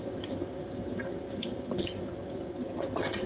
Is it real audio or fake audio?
fake